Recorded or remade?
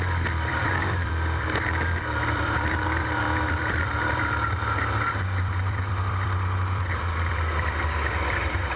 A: remade